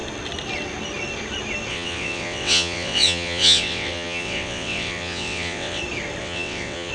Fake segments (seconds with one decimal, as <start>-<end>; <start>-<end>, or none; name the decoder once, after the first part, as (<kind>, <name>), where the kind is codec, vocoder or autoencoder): 1.7-5.8 (vocoder, WaveNeXt); 6.2-6.9

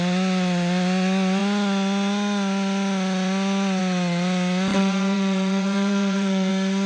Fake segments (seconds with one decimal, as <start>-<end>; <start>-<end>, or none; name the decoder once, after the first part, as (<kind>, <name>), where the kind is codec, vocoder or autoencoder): 4.7-6.5 (vocoder, WaveNeXt)

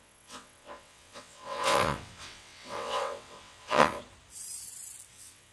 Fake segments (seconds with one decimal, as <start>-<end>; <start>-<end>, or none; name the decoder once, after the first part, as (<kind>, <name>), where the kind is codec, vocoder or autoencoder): 0.0-4.0 (vocoder, WaveNeXt); 5.1-5.5

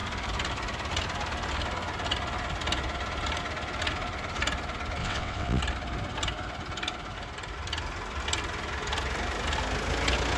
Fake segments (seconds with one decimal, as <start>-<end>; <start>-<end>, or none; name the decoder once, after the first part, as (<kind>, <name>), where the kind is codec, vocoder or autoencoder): 5.0-5.6 (vocoder, WaveNeXt)

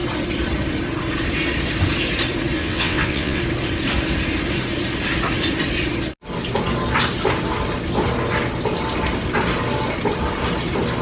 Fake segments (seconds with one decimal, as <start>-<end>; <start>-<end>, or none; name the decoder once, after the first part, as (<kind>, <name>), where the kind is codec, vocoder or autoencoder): 2.6-3.4 (vocoder, WaveNeXt)